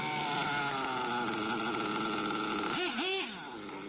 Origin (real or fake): real